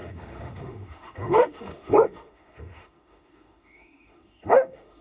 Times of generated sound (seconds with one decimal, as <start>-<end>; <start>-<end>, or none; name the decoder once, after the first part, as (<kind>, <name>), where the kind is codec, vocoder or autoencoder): 0.0-5.0 (autoencoder, DAC-VAE)